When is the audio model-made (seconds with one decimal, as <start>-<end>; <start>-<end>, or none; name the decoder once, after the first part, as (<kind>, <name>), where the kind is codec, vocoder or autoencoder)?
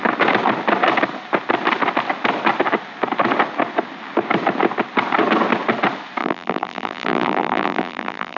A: 6.2-8.4 (vocoder, BigVGAN v2)